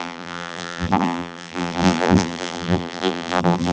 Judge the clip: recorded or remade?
remade